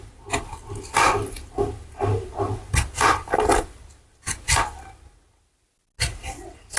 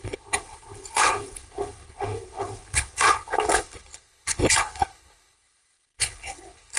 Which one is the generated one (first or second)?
second